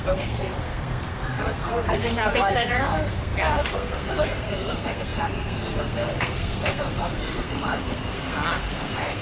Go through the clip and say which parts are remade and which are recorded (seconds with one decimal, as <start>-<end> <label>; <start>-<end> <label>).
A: 0.0-9.2 remade